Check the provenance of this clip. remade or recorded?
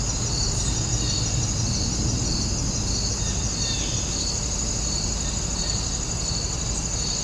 recorded